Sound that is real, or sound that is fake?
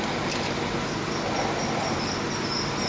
real